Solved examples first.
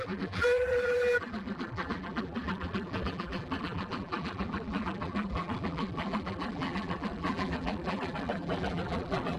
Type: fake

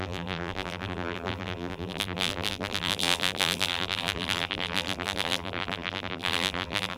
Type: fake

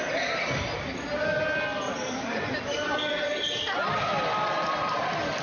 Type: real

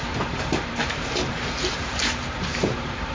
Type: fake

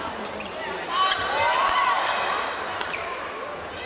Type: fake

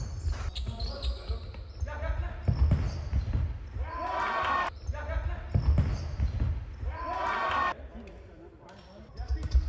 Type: real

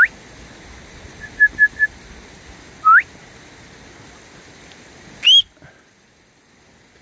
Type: real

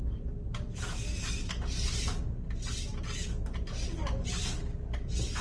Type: real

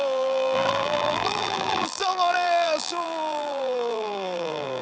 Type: fake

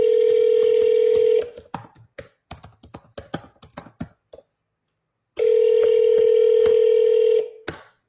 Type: real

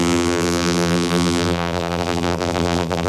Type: fake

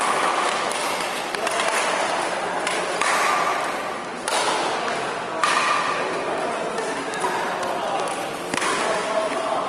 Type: fake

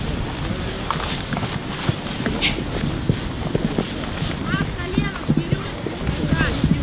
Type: real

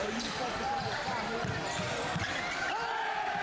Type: fake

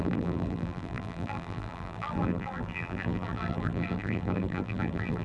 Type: fake